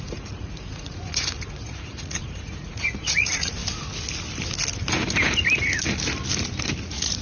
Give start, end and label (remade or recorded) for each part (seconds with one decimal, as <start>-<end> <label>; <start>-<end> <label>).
0.0-3.6 remade; 3.6-6.8 recorded; 6.8-7.2 remade